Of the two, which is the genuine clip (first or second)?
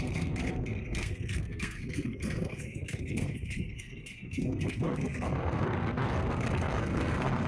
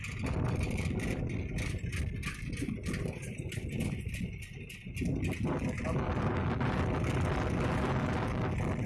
second